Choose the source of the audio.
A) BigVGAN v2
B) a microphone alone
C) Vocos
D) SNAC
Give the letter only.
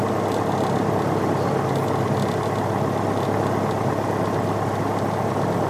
B